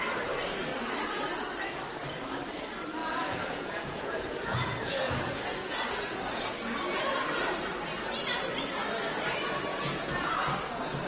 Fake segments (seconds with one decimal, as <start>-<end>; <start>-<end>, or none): 3.0-6.5; 9.7-10.3